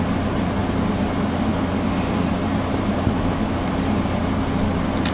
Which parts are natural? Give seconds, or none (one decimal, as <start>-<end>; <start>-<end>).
0.0-0.6; 1.5-2.5; 3.1-5.1